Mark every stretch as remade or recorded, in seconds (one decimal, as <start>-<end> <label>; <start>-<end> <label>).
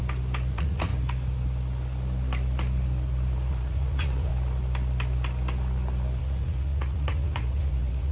0.0-0.5 recorded; 0.5-0.9 remade; 0.9-3.5 recorded; 3.5-4.3 remade; 4.3-6.2 recorded; 6.2-8.1 remade